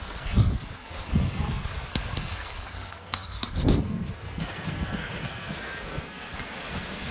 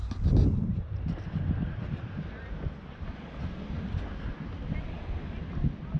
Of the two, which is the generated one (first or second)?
first